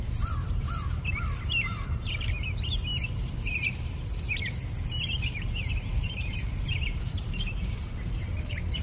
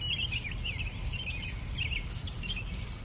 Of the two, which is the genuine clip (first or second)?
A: second